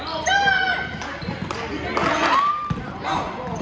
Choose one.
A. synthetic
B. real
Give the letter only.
B